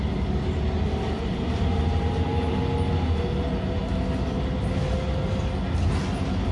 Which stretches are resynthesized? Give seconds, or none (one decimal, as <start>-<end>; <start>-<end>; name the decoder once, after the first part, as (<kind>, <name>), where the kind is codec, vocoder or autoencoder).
0.9-2.6 (vocoder, BigVGAN v2)